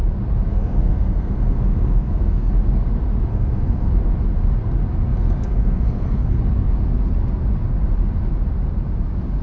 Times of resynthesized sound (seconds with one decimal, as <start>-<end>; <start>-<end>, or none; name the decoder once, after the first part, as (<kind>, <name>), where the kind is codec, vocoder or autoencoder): 0.5-2.5 (codec, SNAC); 3.3-3.9; 5.1-6.4